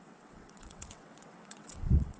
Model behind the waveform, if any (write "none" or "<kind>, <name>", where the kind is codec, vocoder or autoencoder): vocoder, WaveNeXt